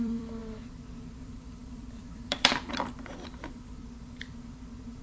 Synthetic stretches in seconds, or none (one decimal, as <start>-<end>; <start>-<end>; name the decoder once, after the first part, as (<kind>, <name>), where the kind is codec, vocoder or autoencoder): 0.0-0.4 (vocoder, BigVGAN v2); 1.2-3.8